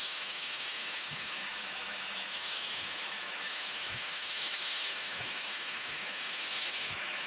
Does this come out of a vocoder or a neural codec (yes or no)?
yes